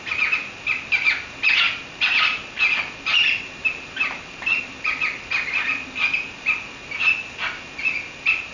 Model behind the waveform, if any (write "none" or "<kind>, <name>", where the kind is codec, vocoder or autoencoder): none